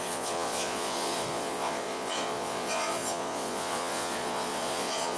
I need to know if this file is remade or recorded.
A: remade